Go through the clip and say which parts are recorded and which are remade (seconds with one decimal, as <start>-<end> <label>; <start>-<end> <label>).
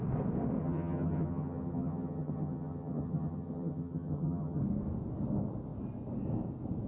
0.0-0.6 recorded; 0.6-4.6 remade; 4.6-6.9 recorded